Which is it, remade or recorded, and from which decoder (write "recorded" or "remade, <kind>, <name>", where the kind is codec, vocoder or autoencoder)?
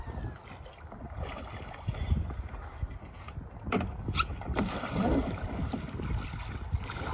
recorded